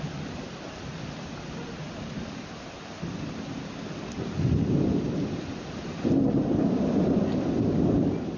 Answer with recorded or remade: remade